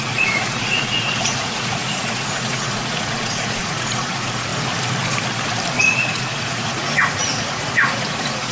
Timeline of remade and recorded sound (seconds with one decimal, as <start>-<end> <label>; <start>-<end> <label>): 0.0-4.5 remade; 4.5-5.8 recorded; 5.8-8.5 remade